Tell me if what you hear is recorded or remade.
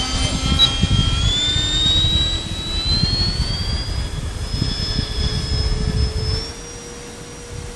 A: recorded